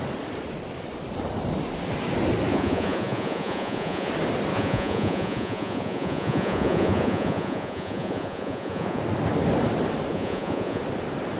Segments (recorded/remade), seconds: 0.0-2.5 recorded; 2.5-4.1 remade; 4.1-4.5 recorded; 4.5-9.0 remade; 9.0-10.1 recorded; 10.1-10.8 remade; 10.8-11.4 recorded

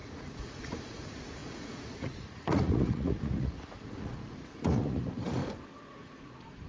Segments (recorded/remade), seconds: 0.0-5.4 remade; 5.4-5.9 recorded; 5.9-6.7 remade

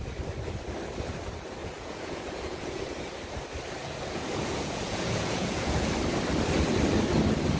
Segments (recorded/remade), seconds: 0.0-1.6 recorded; 1.6-2.8 remade; 2.8-3.8 recorded; 3.8-5.9 remade; 5.9-7.6 recorded